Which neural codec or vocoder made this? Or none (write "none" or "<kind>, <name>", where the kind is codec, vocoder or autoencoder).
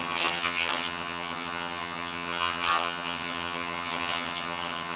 vocoder, HiFi-GAN